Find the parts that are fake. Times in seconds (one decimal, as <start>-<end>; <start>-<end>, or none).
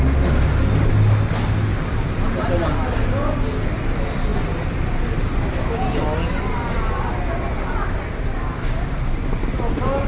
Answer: none